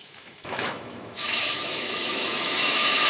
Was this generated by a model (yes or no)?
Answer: yes